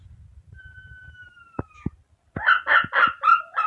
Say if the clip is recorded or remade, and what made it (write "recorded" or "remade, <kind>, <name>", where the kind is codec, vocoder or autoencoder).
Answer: recorded